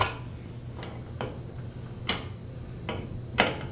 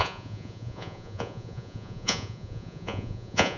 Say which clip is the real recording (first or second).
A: first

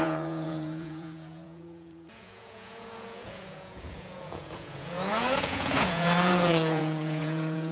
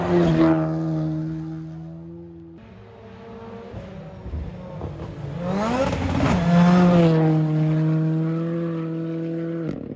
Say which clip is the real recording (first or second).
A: second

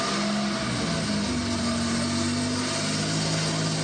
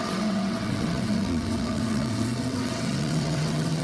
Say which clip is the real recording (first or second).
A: first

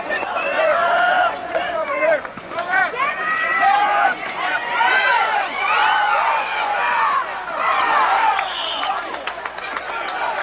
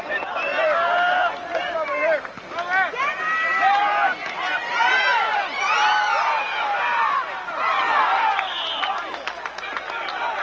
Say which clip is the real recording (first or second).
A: second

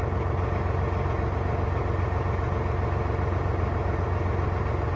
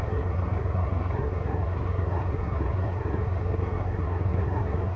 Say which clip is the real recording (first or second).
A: first